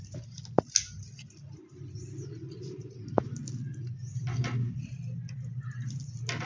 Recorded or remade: recorded